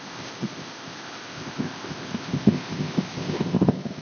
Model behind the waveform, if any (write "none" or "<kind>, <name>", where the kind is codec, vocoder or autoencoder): codec, ZipCodec